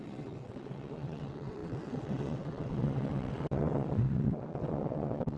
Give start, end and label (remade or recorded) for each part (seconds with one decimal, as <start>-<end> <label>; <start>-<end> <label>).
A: 0.0-5.4 remade